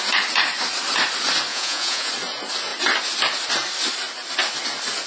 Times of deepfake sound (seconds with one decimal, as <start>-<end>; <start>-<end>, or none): 1.5-2.1